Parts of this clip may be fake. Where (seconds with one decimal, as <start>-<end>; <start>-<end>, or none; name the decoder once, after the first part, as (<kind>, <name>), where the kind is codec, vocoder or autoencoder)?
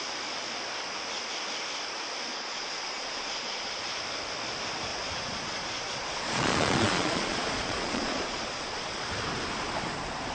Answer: 2.3-3.7 (vocoder, Vocos); 4.9-9.1